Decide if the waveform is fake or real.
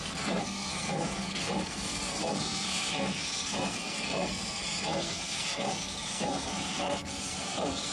fake